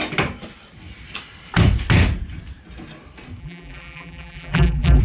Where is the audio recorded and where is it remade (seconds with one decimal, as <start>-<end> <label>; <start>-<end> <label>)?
0.0-3.4 recorded; 3.4-5.0 remade